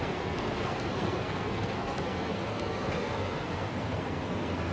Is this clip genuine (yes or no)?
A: no